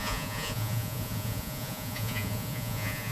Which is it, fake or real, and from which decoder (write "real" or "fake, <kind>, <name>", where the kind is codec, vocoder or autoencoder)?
fake, vocoder, Vocos